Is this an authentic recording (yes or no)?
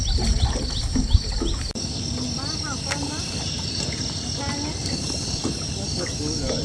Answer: yes